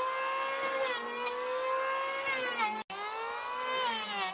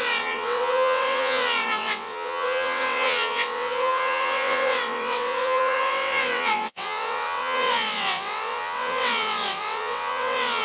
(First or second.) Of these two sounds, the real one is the first